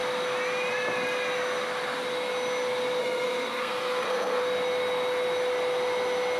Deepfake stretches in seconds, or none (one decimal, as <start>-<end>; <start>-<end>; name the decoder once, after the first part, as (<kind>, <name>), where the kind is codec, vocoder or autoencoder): 3.0-4.4 (codec, SNAC)